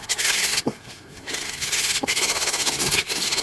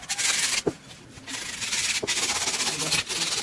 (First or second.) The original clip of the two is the second